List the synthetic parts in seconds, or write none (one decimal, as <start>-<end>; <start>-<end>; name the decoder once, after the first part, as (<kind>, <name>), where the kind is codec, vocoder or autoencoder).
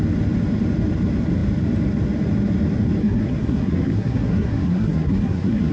3.0-5.7 (codec, SNAC)